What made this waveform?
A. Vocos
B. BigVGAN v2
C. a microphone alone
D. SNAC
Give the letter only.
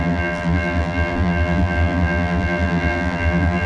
B